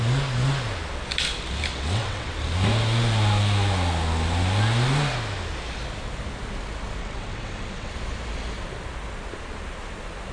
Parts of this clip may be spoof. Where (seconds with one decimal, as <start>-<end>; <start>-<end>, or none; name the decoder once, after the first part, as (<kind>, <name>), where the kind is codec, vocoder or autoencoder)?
1.7-2.3 (vocoder, WaveNeXt); 7.0-7.9